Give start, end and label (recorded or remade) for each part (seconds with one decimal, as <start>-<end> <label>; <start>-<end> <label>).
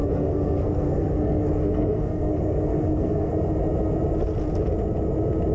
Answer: 0.0-3.3 remade; 3.3-5.5 recorded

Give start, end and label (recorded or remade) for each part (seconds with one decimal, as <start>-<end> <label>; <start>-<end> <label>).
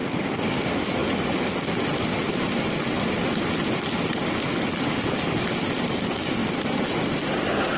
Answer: 0.0-7.8 recorded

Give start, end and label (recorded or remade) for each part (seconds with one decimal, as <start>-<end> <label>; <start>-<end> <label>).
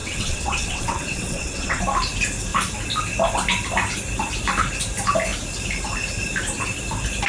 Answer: 0.0-1.8 remade; 1.8-7.3 recorded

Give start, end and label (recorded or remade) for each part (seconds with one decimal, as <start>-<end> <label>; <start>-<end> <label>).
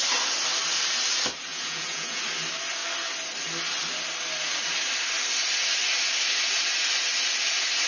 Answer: 0.0-1.5 recorded; 1.5-2.2 remade; 2.2-7.9 recorded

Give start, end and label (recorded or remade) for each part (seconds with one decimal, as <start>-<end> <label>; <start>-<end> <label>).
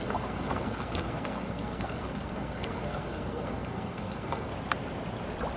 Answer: 0.0-4.5 remade; 4.5-5.6 recorded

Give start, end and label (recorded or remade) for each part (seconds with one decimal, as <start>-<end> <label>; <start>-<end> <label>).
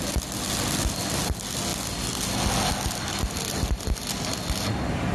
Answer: 0.0-5.1 recorded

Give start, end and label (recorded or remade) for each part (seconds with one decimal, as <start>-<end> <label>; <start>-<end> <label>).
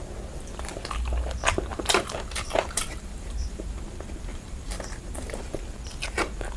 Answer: 0.0-1.7 recorded; 1.7-3.8 remade; 3.8-4.3 recorded; 4.3-5.5 remade; 5.5-6.6 recorded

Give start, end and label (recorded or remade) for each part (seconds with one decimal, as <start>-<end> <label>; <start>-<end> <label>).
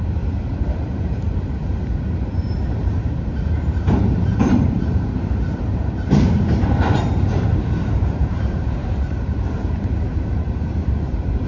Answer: 0.0-11.5 remade